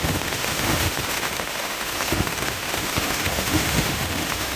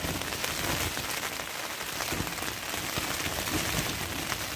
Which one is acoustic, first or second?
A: second